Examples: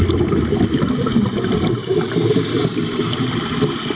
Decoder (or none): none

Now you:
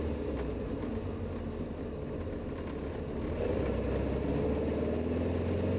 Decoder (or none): none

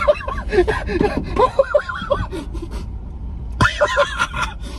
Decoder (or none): vocoder, BigVGAN v2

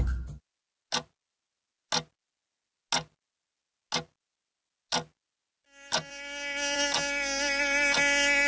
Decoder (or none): none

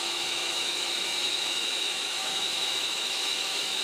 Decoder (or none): autoencoder, DAC-VAE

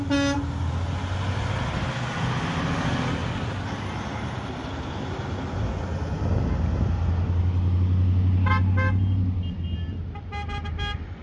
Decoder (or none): none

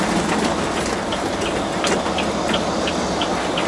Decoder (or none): vocoder, BigVGAN v2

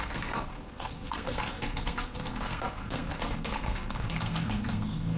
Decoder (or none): codec, SNAC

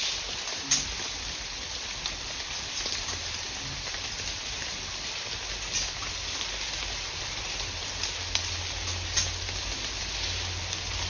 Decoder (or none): none